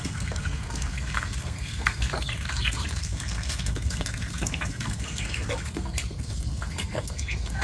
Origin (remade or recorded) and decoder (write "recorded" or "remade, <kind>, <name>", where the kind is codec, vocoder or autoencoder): remade, codec, SNAC